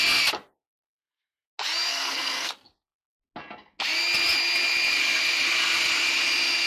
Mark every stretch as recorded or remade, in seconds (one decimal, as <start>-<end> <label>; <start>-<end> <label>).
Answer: 0.0-1.9 recorded; 1.9-2.5 remade; 2.5-6.7 recorded